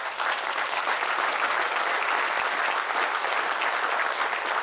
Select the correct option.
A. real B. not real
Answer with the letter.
A